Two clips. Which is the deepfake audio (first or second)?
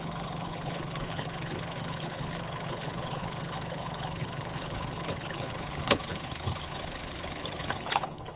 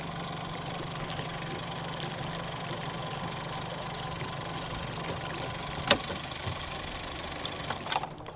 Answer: first